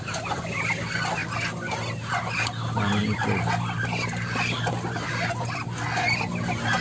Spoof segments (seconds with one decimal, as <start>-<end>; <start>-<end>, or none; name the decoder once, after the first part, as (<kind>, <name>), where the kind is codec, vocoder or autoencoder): none